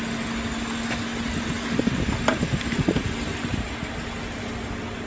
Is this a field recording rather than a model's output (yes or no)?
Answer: yes